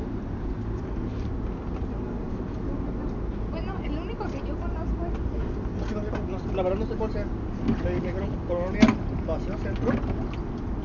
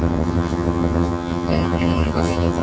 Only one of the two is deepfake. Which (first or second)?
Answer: second